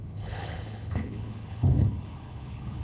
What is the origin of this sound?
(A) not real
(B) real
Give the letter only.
A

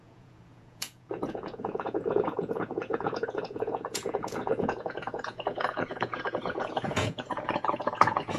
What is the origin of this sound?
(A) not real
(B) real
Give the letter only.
A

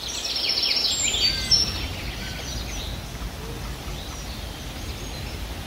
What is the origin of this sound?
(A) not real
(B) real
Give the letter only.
B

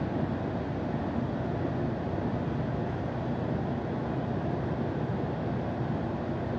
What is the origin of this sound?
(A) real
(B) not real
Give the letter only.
A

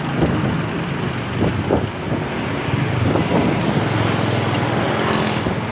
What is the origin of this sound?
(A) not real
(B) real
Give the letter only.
B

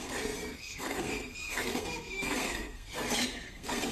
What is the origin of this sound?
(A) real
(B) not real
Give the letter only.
B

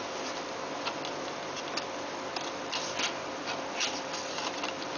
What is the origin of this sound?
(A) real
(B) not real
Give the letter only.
A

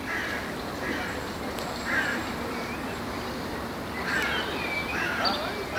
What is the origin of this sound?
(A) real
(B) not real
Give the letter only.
A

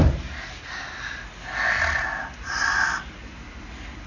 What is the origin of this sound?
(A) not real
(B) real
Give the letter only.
B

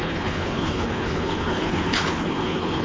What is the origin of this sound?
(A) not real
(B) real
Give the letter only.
A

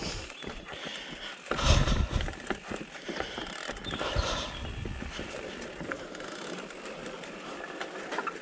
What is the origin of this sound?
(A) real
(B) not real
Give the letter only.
A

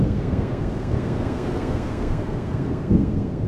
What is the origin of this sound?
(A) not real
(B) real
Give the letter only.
A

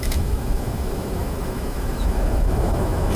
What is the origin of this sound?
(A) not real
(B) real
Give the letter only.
A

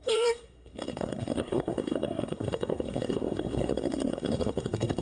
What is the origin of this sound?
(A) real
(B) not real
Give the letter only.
B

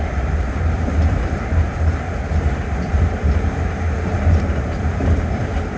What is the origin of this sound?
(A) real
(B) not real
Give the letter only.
B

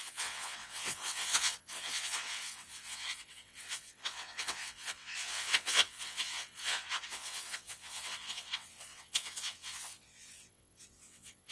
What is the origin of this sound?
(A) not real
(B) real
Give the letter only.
A